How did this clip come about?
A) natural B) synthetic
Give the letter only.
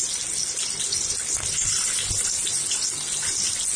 A